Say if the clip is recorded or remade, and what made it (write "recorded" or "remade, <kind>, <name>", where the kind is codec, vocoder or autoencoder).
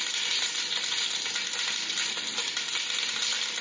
recorded